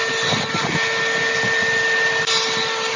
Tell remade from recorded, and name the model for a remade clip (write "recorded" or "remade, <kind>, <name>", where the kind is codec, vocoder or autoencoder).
recorded